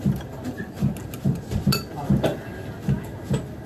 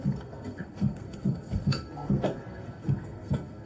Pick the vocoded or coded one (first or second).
second